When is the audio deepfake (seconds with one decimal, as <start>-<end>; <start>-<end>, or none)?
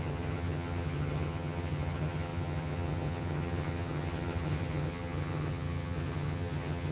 0.0-6.9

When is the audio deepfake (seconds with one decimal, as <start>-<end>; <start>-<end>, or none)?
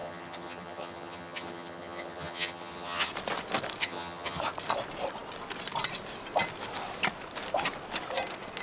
0.0-3.1; 3.8-4.4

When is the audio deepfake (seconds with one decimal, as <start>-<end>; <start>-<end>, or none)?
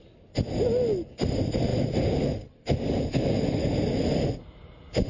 none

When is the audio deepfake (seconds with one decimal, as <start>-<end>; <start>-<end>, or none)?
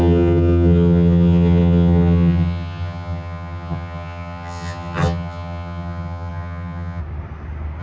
0.0-7.0